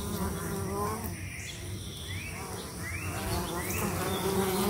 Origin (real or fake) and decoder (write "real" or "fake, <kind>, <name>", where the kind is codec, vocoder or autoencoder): real